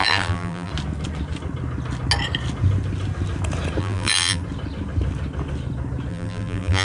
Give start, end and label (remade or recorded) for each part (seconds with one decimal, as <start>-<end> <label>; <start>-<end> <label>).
0.0-0.7 remade; 0.7-3.8 recorded; 3.8-4.4 remade; 4.4-6.1 recorded; 6.1-6.8 remade